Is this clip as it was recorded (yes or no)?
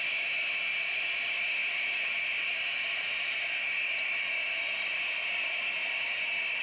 yes